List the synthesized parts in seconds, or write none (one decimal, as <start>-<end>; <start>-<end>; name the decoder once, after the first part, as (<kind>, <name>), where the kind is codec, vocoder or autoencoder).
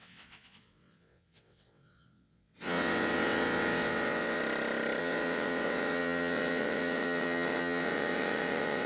0.0-4.4 (vocoder, WaveNeXt); 5.0-8.9